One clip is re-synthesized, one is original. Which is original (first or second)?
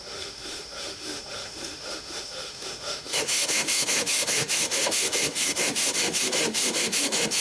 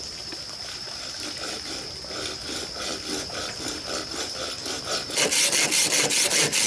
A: second